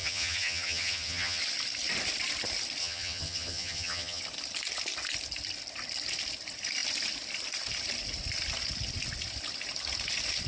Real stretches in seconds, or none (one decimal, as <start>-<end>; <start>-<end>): 1.4-2.8; 4.2-10.5